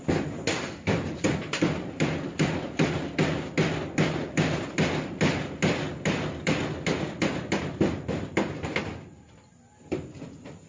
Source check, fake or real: real